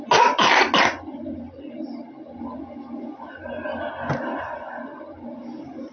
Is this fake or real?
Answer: real